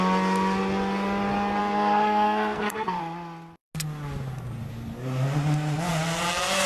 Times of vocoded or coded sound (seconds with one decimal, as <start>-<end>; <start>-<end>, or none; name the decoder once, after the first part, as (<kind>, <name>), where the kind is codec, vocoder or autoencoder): 1.6-3.0 (codec, SNAC)